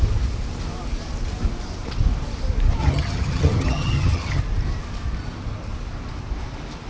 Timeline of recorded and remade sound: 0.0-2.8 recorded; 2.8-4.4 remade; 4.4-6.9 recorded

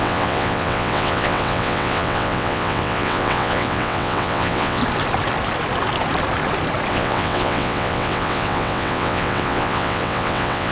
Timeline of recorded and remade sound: 0.0-4.8 remade; 4.8-6.9 recorded; 6.9-10.7 remade